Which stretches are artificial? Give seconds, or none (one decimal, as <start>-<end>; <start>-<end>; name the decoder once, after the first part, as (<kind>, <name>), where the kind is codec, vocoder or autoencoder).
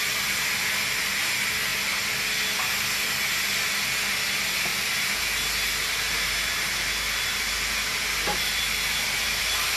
none